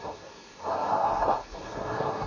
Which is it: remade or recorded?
remade